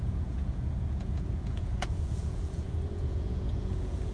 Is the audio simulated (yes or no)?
yes